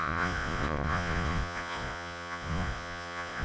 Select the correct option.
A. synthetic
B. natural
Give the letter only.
A